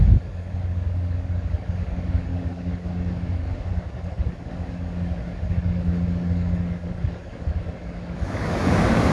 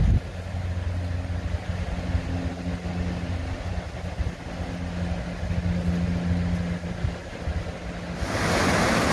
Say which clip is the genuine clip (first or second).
second